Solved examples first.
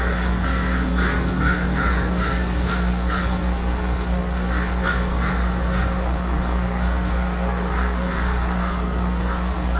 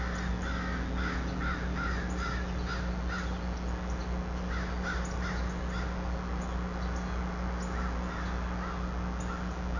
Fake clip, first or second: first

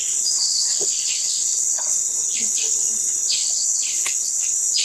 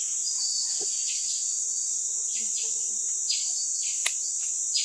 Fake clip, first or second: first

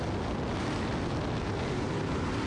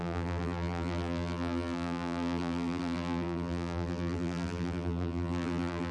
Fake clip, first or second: second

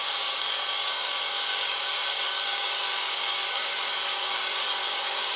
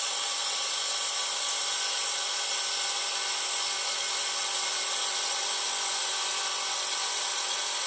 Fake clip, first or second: first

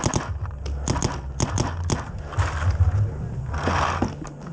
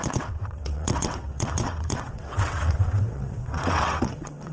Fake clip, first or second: second